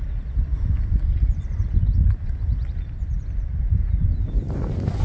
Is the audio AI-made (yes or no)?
no